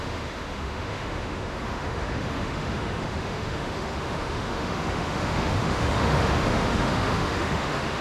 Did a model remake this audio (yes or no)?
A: yes